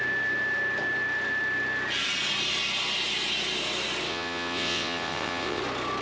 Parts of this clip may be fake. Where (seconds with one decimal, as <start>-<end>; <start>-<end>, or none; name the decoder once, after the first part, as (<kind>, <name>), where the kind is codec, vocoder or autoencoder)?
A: 4.1-5.6 (vocoder, WaveNeXt)